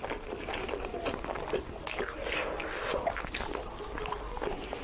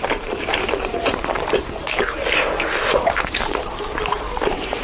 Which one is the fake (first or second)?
second